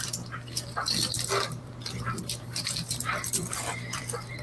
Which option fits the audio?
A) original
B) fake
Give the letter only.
B